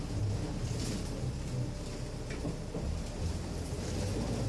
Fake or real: real